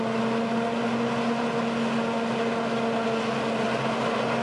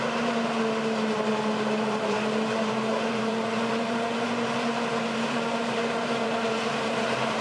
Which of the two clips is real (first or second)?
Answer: first